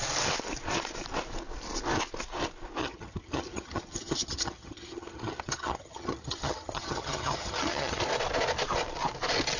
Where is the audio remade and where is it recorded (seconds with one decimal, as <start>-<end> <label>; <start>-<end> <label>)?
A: 0.0-2.8 recorded; 2.8-8.0 remade; 8.0-9.6 recorded